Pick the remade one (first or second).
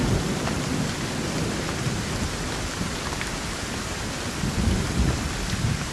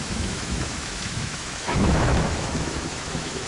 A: second